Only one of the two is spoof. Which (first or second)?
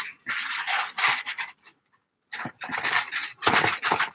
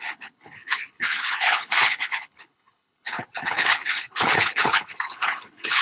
second